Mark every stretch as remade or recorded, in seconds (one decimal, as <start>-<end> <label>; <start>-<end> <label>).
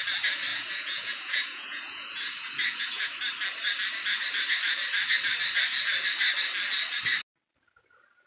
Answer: 0.0-0.5 recorded; 0.5-3.1 remade; 3.1-8.3 recorded